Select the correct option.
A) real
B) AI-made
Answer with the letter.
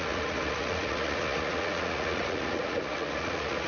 B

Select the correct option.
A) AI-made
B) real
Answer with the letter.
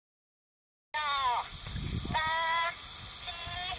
B